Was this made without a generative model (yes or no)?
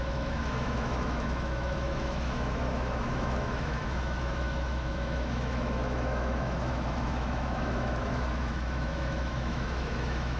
no